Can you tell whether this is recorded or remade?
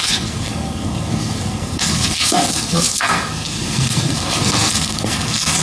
remade